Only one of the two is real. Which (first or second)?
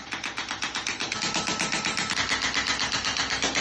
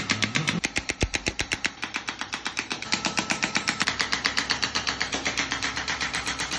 first